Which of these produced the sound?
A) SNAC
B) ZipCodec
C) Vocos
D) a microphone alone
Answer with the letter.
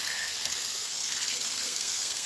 A